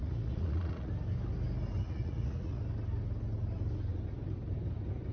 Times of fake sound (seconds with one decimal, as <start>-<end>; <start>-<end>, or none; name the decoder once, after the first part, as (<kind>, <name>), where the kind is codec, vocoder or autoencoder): 0.0-0.9 (vocoder, Vocos); 1.8-2.6